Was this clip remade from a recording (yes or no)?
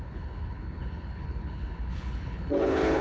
yes